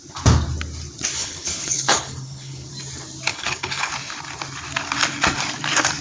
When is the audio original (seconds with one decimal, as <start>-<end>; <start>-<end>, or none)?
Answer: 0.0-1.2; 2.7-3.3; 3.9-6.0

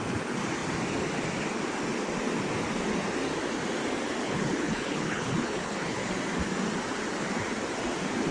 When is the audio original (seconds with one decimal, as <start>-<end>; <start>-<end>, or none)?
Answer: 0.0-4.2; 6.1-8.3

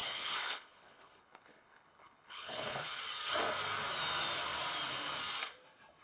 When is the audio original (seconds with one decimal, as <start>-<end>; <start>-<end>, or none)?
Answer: 3.0-6.0

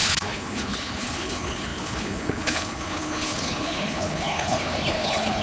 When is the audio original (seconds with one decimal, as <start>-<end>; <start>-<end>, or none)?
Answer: none

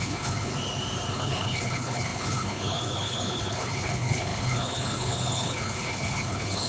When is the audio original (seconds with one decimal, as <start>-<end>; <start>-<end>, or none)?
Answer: 0.5-1.1

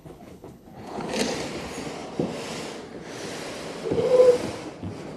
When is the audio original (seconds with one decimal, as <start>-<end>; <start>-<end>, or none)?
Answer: 1.1-5.2

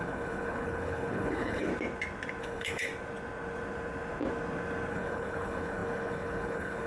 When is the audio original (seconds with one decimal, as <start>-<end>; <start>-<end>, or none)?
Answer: 1.7-2.4; 2.9-4.9